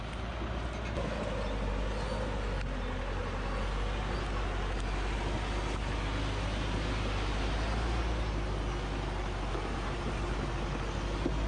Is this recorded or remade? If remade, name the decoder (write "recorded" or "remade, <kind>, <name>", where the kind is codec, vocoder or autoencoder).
recorded